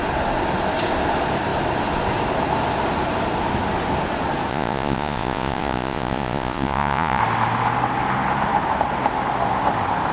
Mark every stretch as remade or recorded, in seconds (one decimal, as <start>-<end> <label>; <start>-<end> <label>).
0.0-4.5 recorded; 4.5-7.2 remade; 7.2-10.1 recorded